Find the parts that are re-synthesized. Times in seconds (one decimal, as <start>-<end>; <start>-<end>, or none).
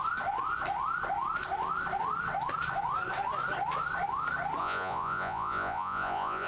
4.6-6.5